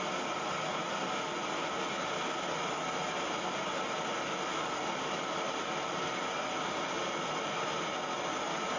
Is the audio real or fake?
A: real